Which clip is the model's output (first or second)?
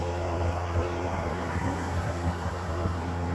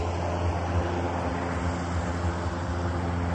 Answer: first